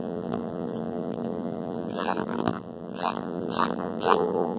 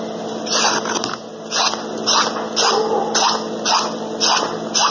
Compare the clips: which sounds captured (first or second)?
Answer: second